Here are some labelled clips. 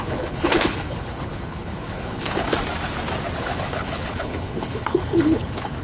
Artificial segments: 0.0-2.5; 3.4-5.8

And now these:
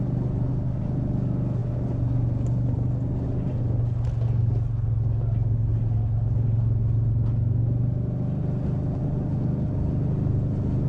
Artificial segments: none

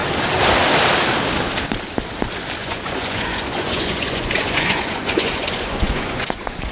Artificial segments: 2.6-6.7